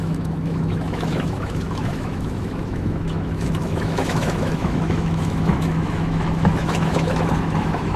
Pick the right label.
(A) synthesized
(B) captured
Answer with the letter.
A